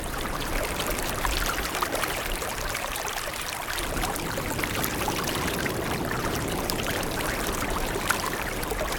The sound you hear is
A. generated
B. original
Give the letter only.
A